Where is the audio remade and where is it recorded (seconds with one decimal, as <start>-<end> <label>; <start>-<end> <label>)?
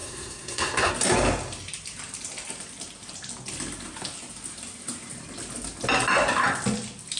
0.0-0.9 remade; 0.9-7.2 recorded